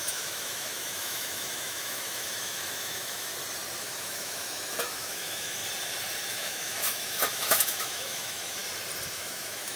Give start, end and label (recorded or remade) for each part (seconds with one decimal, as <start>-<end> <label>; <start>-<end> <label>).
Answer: 0.0-3.3 remade; 3.3-3.8 recorded; 3.8-5.6 remade; 5.6-6.3 recorded; 6.3-8.6 remade; 8.6-9.1 recorded; 9.1-9.8 remade